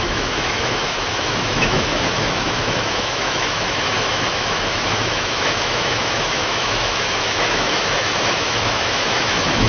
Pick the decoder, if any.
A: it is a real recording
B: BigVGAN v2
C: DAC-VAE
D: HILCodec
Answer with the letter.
C